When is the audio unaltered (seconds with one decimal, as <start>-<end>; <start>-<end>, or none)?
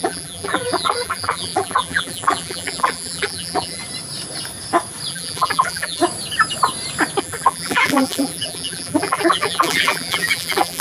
3.8-5.1; 6.0-7.2